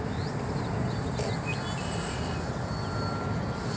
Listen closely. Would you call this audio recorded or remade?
recorded